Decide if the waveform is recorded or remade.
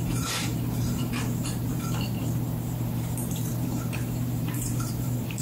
remade